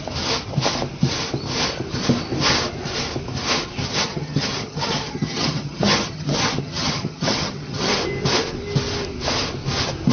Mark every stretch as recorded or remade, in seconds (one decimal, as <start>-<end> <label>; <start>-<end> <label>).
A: 0.0-3.8 recorded; 3.8-8.0 remade; 8.0-10.1 recorded

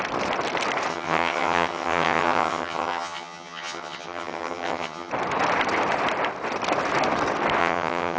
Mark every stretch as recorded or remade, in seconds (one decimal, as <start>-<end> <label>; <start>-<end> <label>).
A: 0.0-0.9 recorded; 0.9-5.1 remade; 5.1-7.6 recorded; 7.6-8.2 remade

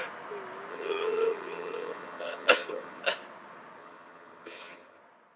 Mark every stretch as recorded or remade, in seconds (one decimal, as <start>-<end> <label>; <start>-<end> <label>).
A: 0.0-0.7 recorded; 0.7-3.0 remade; 3.0-3.8 recorded; 3.8-5.0 remade; 5.0-5.4 recorded

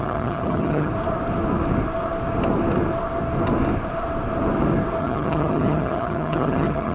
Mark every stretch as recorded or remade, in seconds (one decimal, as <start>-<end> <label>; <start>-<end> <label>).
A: 0.0-0.9 remade; 0.9-5.0 recorded; 5.0-6.9 remade

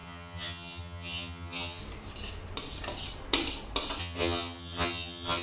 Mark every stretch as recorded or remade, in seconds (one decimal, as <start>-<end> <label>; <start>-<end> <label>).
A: 0.0-1.8 remade; 1.8-4.0 recorded; 4.0-5.4 remade

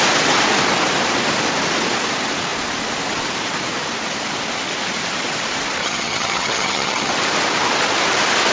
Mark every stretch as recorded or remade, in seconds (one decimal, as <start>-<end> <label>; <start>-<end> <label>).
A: 0.0-5.8 recorded; 5.8-7.1 remade; 7.1-8.5 recorded